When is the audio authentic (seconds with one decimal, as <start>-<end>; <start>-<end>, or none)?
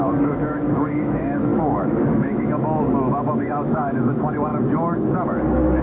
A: 4.5-5.8